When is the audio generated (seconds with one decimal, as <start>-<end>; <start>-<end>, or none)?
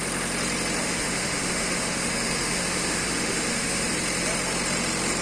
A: 0.8-3.9